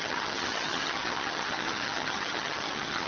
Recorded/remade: remade